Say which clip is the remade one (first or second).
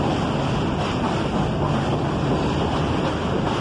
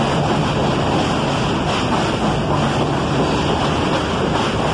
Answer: first